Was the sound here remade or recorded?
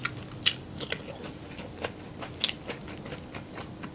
recorded